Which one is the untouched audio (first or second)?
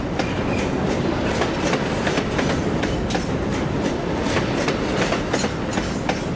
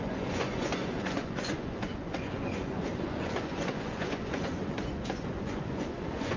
first